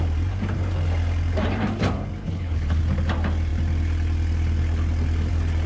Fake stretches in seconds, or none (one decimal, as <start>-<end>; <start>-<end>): 2.2-2.8

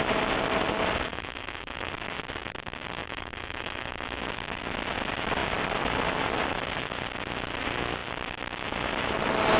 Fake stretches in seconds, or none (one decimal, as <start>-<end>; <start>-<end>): 1.1-1.9; 3.0-4.2